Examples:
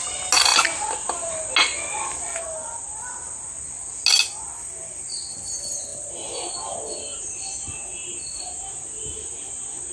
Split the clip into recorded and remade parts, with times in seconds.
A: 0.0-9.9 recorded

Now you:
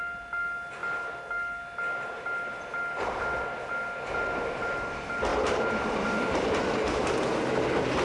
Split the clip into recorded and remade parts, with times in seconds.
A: 0.0-8.0 recorded